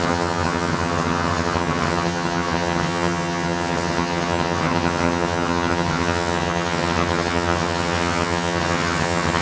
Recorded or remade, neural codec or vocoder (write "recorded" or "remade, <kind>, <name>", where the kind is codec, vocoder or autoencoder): remade, vocoder, HiFi-GAN